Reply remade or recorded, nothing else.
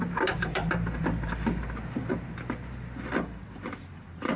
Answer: remade